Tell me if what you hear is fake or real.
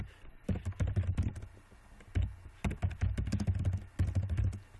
real